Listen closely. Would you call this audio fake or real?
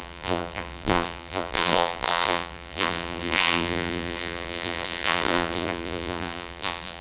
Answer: fake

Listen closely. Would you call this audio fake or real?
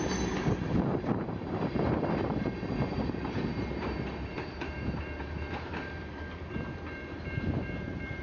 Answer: fake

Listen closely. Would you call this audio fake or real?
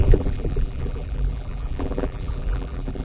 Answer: fake